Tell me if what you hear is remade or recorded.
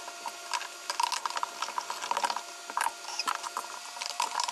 recorded